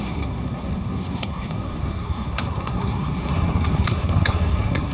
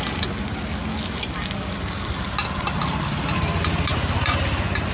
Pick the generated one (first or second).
first